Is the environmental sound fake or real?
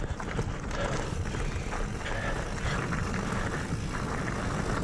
real